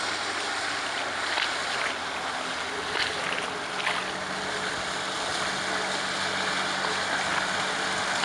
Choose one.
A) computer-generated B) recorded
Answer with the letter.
B